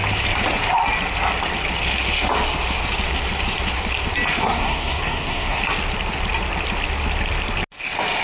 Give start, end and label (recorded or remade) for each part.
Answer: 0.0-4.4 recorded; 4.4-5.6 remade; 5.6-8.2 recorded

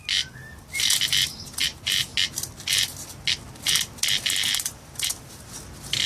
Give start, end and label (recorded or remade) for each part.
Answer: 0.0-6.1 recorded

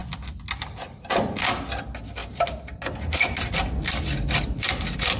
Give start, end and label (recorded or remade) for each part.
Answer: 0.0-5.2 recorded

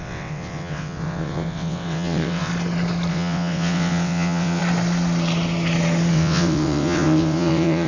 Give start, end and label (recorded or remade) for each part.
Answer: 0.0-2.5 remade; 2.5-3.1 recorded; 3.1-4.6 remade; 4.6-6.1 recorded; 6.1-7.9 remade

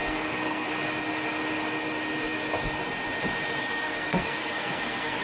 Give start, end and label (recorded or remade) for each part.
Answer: 0.0-0.7 remade; 0.7-3.6 recorded; 3.6-5.2 remade

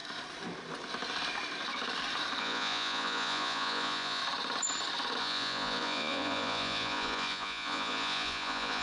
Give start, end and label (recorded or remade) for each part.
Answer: 0.0-2.4 recorded; 2.4-4.2 remade; 4.2-5.2 recorded; 5.2-8.8 remade

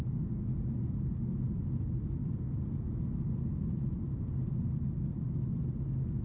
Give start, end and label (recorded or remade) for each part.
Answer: 0.0-6.2 recorded